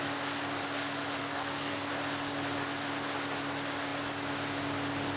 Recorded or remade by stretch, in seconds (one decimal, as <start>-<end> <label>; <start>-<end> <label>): 0.0-1.2 recorded; 1.2-1.9 remade; 1.9-5.2 recorded